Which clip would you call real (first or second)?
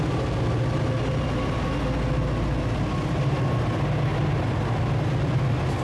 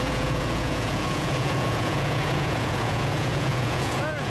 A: first